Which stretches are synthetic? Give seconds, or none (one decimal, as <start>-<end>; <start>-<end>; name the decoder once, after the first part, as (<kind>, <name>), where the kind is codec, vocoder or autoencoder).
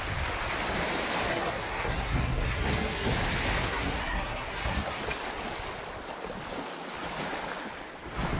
1.3-3.1 (codec, SNAC); 3.6-5.0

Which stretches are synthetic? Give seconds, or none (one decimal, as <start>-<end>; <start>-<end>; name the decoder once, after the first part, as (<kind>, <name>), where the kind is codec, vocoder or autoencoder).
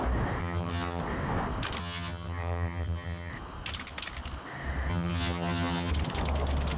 0.4-1.0 (vocoder, HiFi-GAN); 1.8-3.3; 4.9-5.9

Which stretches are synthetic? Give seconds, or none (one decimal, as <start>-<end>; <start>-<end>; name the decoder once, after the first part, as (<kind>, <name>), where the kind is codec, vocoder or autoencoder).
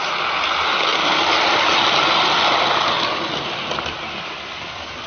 none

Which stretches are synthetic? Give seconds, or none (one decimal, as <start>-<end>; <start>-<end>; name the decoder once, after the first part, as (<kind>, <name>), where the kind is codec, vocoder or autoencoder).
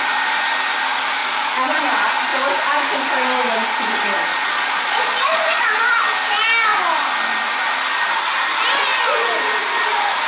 1.2-1.8 (vocoder, Vocos); 4.3-5.8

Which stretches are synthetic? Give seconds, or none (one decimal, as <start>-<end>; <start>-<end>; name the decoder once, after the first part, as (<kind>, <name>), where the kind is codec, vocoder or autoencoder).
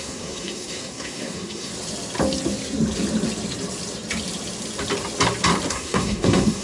0.0-1.7 (codec, SNAC); 5.7-6.6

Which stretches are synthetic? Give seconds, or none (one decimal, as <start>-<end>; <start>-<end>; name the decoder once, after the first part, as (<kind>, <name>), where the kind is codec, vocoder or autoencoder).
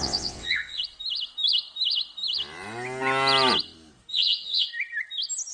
0.0-0.8 (vocoder, WaveNeXt); 4.1-4.7